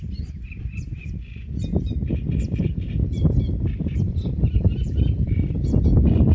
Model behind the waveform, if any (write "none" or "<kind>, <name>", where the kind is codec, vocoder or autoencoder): vocoder, BigVGAN v2